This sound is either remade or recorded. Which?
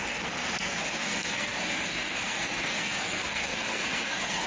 remade